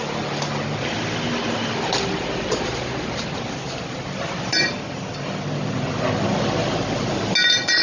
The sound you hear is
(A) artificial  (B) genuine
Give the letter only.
B